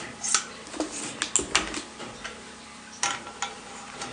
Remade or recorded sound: recorded